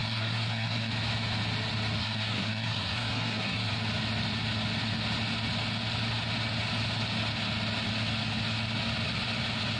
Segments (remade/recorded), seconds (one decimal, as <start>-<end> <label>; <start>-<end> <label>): 0.0-0.9 remade; 0.9-2.0 recorded; 2.0-3.7 remade; 3.7-9.8 recorded